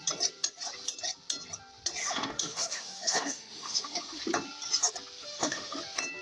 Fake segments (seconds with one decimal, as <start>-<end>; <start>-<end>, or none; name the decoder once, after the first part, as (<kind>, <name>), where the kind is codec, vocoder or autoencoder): 2.0-4.2 (autoencoder, DAC-VAE); 5.2-5.8

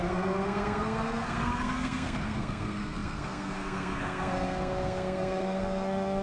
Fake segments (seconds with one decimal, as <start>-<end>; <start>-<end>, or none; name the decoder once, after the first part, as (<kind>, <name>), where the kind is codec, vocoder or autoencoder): 0.0-6.2 (codec, SNAC)

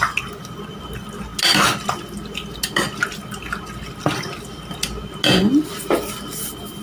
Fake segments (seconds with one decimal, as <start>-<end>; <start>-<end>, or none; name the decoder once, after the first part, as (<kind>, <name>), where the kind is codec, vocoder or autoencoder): none

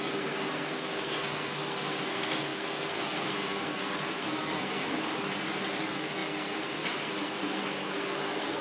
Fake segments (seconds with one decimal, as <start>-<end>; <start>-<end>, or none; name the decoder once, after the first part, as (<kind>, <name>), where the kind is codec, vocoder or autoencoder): 0.0-5.0 (codec, SNAC); 5.8-8.6